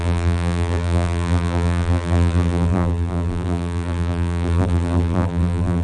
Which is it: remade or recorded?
remade